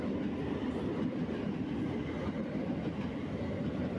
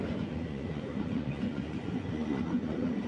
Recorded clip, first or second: first